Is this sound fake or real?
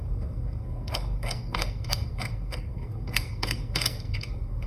fake